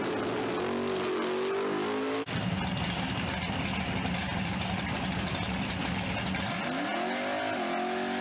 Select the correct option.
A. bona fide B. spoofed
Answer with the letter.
A